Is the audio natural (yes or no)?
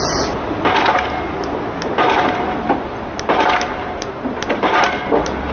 yes